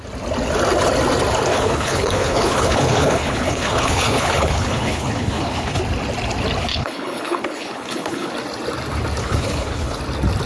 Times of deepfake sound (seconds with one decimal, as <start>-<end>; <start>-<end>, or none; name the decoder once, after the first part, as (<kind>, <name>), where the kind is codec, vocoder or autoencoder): 1.5-5.8 (codec, HILCodec); 6.7-8.3; 9.2-10.0